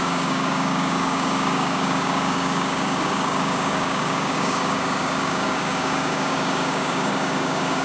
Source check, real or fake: fake